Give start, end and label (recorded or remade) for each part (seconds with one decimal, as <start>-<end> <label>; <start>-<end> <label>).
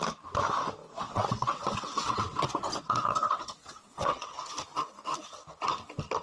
0.0-0.8 recorded; 0.8-4.5 remade; 4.5-6.2 recorded